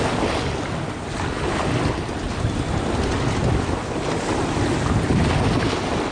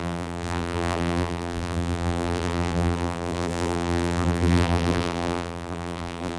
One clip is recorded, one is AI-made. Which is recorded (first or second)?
first